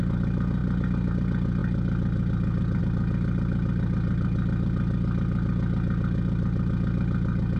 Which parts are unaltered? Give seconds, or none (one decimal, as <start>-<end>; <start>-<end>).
0.0-7.6

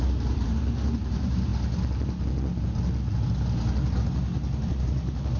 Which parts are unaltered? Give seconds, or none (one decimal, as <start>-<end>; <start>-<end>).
1.5-4.7

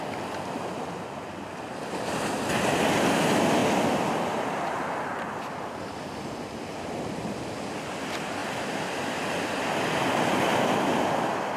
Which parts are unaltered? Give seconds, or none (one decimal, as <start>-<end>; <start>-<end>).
0.0-6.7; 7.5-11.6

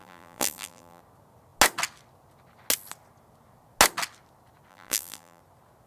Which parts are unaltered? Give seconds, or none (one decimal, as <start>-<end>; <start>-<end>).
1.0-4.7; 5.4-5.9

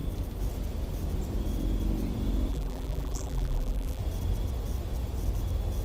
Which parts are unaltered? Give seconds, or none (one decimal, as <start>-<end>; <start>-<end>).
0.0-2.5; 4.0-5.8

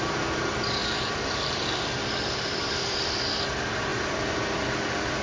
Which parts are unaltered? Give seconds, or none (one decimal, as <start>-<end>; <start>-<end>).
0.0-0.8; 3.2-3.9